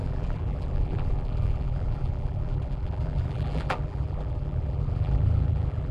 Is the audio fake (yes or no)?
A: yes